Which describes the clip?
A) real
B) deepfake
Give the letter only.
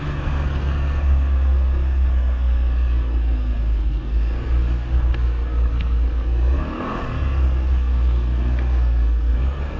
B